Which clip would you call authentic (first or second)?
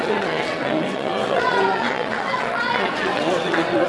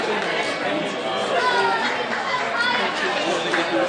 second